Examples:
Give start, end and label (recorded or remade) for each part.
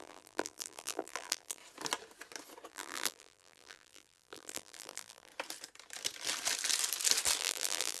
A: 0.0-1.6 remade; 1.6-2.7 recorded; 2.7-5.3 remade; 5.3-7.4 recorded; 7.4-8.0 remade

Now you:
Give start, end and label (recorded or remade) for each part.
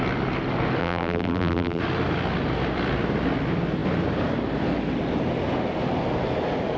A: 0.0-0.8 recorded; 0.8-1.8 remade; 1.8-6.8 recorded